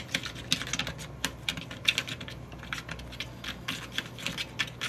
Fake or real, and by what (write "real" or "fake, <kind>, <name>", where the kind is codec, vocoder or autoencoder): real